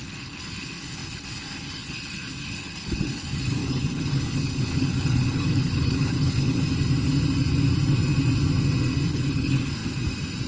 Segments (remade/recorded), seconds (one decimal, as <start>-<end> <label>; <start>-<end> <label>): 0.0-6.6 remade; 6.6-9.1 recorded; 9.1-9.8 remade; 9.8-10.5 recorded